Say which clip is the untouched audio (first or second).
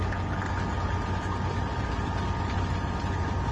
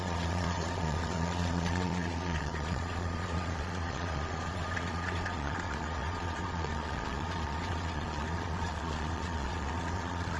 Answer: first